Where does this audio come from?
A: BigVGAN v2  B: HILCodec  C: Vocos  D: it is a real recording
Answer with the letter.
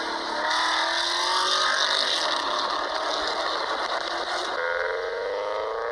D